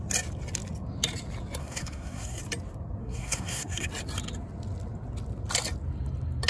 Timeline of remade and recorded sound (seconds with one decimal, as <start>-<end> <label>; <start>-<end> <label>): 0.0-1.6 recorded; 1.6-2.4 remade; 2.4-3.0 recorded; 3.0-3.9 remade; 3.9-6.5 recorded